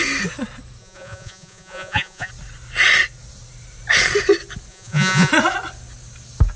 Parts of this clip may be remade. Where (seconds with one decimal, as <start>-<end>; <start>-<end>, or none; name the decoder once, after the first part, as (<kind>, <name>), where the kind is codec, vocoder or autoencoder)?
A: 0.8-2.3 (vocoder, Vocos); 4.7-5.3